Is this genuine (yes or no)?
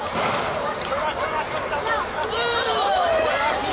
no